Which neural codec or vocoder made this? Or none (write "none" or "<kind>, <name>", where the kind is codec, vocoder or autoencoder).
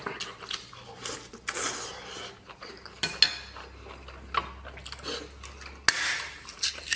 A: none